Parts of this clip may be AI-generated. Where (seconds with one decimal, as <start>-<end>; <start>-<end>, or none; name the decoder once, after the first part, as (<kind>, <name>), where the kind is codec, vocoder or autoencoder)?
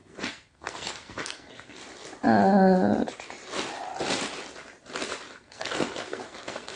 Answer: 0.0-1.8 (codec, SNAC); 5.3-6.8